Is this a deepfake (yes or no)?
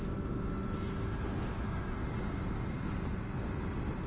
no